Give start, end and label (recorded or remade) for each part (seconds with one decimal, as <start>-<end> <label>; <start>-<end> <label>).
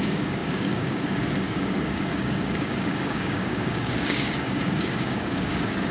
0.0-5.9 remade